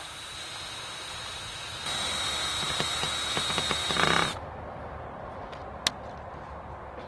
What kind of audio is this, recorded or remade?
recorded